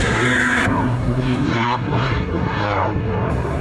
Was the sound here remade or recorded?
remade